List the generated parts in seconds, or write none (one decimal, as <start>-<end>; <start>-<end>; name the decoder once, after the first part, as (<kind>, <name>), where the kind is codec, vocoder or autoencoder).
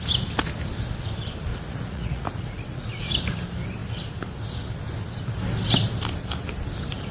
1.5-3.1 (vocoder, Vocos)